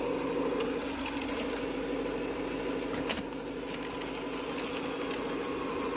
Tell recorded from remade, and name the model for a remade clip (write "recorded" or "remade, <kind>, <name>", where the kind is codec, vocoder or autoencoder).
recorded